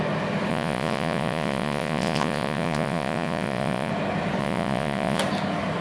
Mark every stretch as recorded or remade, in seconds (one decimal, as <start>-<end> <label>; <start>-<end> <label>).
0.0-0.5 recorded; 0.5-3.9 remade; 3.9-4.4 recorded; 4.4-5.2 remade; 5.2-5.8 recorded